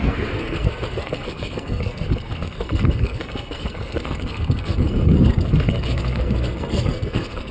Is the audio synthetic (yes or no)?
yes